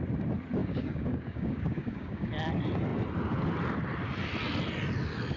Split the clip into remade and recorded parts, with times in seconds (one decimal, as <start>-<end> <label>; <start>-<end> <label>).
0.0-0.6 recorded; 0.6-2.3 remade; 2.3-5.4 recorded

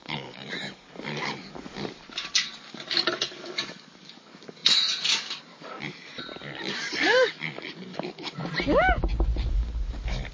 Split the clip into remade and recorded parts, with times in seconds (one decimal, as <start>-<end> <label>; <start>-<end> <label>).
0.0-6.1 remade; 6.1-6.7 recorded; 6.7-8.4 remade; 8.4-9.5 recorded; 9.5-10.3 remade

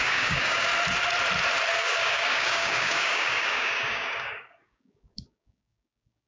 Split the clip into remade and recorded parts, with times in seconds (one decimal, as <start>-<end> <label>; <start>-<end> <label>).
0.0-0.7 remade; 0.7-1.8 recorded; 1.8-6.3 remade

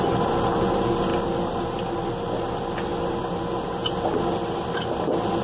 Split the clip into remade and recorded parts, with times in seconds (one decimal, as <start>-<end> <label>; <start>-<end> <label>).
0.0-5.4 recorded